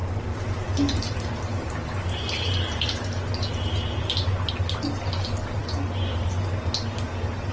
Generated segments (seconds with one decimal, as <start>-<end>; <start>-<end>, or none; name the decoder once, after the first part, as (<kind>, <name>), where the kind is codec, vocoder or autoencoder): none